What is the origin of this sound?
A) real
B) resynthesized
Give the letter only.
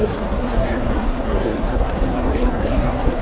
B